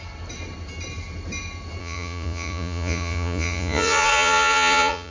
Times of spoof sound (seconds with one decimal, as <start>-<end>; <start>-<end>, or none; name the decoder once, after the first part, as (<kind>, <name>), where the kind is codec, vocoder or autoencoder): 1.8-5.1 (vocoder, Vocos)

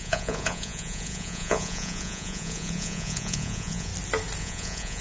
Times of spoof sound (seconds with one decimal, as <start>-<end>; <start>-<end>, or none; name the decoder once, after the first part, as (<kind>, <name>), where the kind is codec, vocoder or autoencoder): 0.0-3.9 (vocoder, Vocos); 4.4-5.0

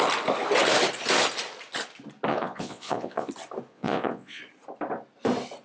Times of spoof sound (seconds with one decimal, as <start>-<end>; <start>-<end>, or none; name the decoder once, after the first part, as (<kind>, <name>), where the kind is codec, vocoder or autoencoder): 2.3-3.3 (vocoder, Vocos); 3.7-4.4